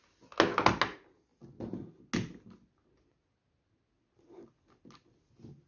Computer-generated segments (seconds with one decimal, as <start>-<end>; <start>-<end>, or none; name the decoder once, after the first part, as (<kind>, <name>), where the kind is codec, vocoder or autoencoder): none